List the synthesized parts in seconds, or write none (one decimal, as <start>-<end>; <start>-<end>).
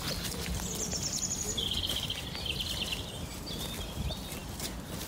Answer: 0.0-5.1